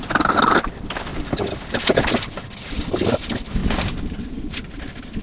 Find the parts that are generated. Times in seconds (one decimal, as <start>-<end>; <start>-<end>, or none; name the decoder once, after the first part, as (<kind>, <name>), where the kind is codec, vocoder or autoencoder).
3.6-4.2 (vocoder, BigVGAN v2)